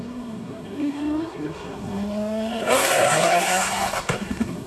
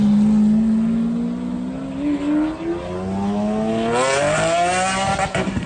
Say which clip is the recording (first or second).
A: second